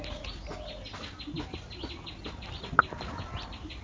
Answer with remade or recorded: recorded